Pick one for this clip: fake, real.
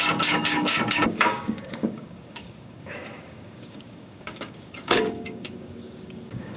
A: fake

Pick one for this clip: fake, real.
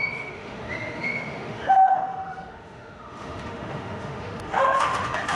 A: fake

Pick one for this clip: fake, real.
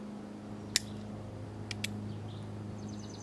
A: real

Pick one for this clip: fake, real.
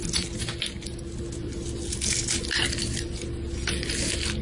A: real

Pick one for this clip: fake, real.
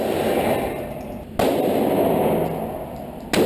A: real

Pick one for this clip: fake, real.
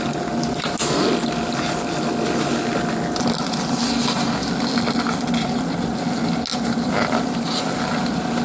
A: real